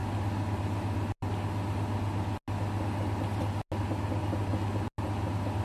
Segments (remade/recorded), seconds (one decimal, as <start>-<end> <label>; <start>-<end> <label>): 0.0-5.6 recorded

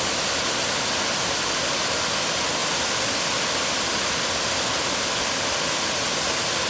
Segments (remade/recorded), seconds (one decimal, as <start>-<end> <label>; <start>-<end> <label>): 0.0-6.7 recorded

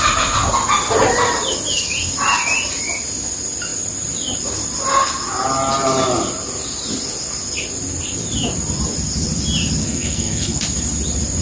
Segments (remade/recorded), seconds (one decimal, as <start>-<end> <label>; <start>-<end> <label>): 0.0-9.8 recorded; 9.8-10.6 remade; 10.6-11.4 recorded

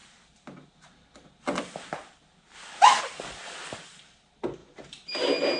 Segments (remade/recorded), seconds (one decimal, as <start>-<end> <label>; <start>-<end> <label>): 0.0-5.6 recorded

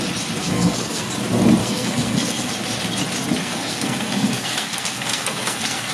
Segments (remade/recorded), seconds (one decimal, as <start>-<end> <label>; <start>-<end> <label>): 0.0-0.4 recorded; 0.4-1.1 remade; 1.1-1.6 recorded; 1.6-2.5 remade; 2.5-3.4 recorded; 3.4-5.9 remade

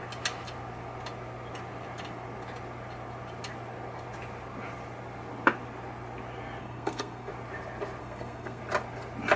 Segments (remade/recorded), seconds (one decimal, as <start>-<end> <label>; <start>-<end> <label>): 0.0-6.6 recorded; 6.6-7.3 remade; 7.3-8.0 recorded; 8.0-8.6 remade; 8.6-9.4 recorded

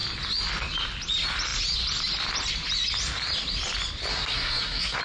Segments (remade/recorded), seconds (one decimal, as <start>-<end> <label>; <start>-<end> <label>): 0.0-4.1 recorded; 4.1-5.0 remade

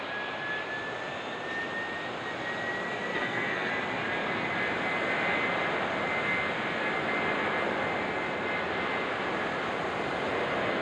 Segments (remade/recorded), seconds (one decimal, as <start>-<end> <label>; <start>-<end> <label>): 0.0-3.1 recorded; 3.1-3.7 remade; 3.7-10.8 recorded